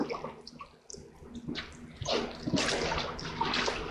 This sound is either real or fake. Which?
real